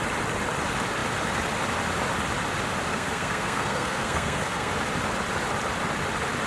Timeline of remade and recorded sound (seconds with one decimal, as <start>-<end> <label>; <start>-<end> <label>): 0.0-2.9 recorded; 2.9-4.7 remade; 4.7-6.5 recorded